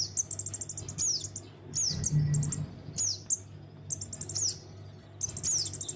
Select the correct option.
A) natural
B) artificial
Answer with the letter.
A